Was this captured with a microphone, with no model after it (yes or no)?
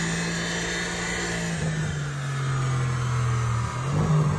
yes